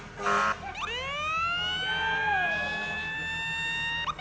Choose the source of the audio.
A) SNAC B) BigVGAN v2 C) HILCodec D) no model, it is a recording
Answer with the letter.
D